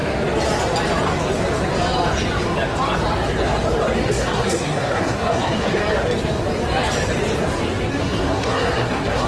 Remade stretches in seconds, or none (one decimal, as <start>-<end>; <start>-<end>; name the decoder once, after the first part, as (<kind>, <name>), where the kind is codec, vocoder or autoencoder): 4.1-5.8 (codec, SNAC); 8.0-9.3